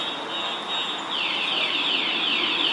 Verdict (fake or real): real